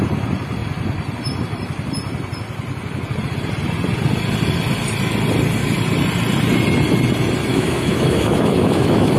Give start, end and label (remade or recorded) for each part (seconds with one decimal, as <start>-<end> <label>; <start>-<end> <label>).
0.0-7.5 recorded; 7.5-9.2 remade